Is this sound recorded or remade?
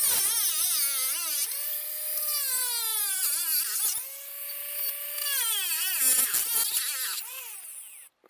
recorded